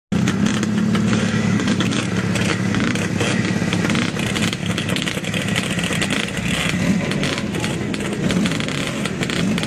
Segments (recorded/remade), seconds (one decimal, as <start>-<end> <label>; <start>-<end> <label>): 0.0-1.1 recorded; 1.1-2.1 remade; 2.1-2.5 recorded; 2.5-3.1 remade; 3.1-4.6 recorded; 4.6-5.4 remade; 5.4-9.7 recorded